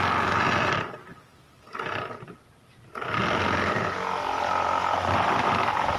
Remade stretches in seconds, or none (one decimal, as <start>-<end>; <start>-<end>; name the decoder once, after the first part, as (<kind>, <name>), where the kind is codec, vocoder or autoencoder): none